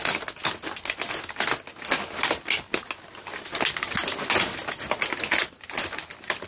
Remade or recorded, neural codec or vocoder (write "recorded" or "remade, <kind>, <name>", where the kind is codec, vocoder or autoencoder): recorded